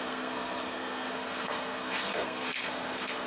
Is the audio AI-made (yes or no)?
yes